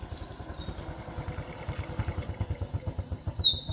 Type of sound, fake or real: real